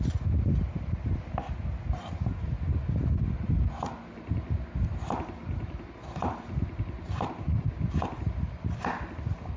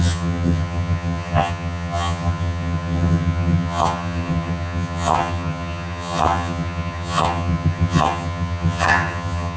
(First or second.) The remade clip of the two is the second